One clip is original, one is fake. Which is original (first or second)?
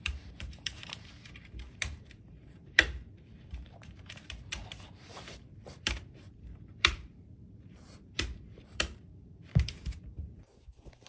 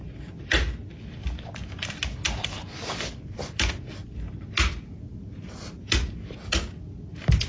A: second